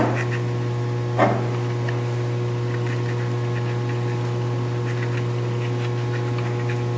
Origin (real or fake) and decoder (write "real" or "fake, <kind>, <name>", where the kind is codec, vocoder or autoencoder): real